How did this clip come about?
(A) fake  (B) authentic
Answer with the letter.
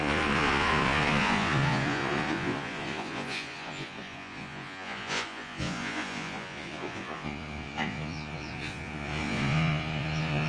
A